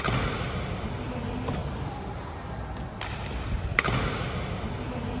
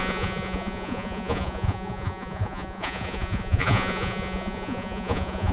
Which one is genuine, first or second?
first